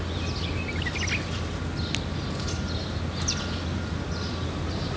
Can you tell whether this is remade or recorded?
recorded